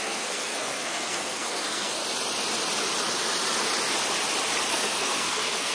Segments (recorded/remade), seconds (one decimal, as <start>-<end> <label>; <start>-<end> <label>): 0.0-2.0 remade; 2.0-4.7 recorded; 4.7-5.7 remade